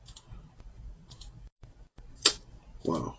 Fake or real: fake